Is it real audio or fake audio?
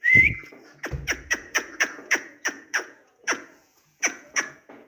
fake